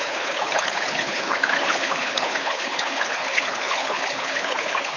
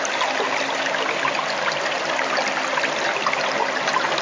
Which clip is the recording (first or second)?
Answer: second